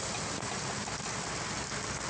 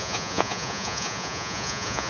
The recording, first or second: first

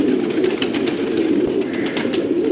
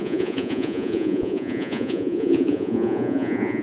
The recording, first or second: first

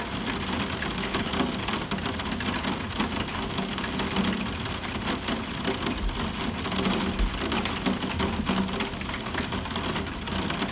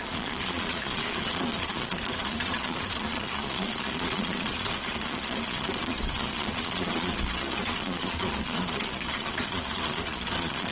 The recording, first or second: first